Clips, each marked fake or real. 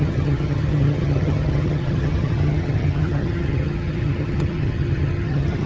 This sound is fake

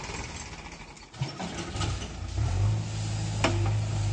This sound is real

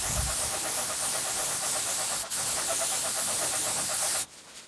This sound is real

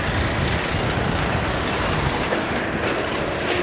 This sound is real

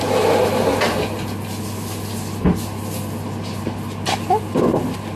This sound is real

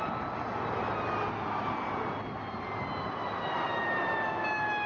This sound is real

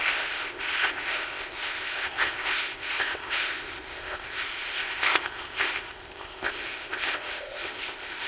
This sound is fake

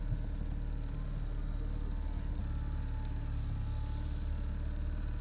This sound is real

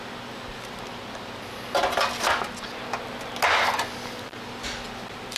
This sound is real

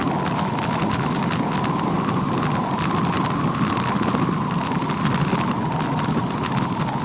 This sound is real